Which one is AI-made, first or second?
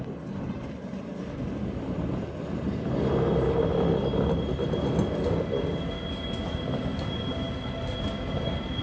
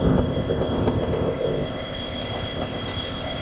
second